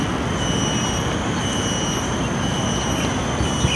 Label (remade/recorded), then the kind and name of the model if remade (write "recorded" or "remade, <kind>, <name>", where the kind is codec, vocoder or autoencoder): recorded